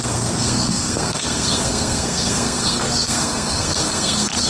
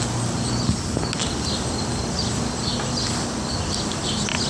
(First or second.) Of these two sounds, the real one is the second